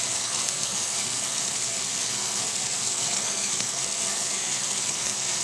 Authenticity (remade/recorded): remade